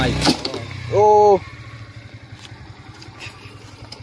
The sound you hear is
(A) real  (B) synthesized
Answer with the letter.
A